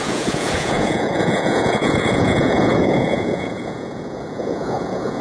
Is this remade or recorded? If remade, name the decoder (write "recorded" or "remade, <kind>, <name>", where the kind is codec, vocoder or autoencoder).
remade, vocoder, Vocos